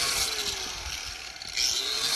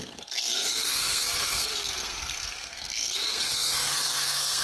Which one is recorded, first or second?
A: first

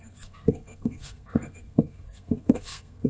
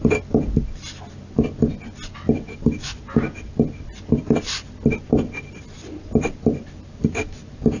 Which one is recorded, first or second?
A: second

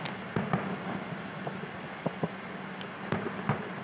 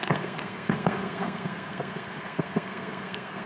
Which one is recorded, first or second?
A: first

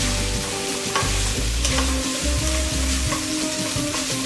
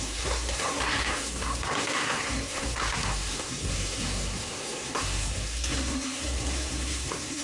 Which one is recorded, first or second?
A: first